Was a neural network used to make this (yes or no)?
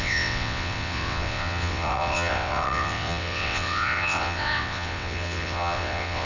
yes